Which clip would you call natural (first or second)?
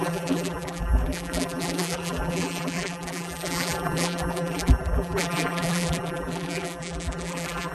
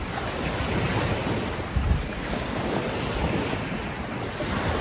second